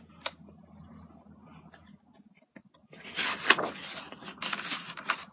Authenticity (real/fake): real